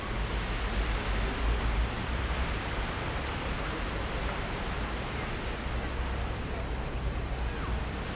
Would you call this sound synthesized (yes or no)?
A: no